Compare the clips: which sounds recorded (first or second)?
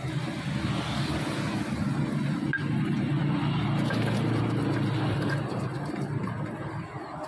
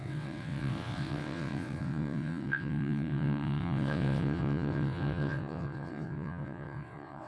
first